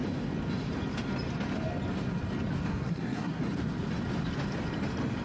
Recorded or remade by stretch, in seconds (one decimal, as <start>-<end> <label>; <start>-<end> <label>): 0.0-2.7 recorded; 2.7-3.4 remade; 3.4-5.2 recorded